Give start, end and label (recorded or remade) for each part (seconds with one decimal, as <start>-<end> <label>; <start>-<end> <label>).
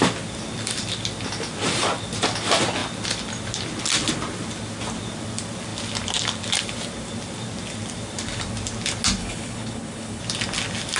0.0-9.2 recorded; 9.2-10.2 remade; 10.2-11.0 recorded